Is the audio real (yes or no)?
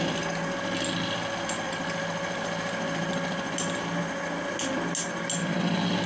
yes